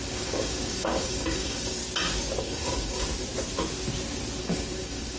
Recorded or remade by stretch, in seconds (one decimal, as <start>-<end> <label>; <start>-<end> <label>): 0.0-1.8 remade; 1.8-2.4 recorded; 2.4-3.1 remade; 3.1-4.4 recorded; 4.4-5.2 remade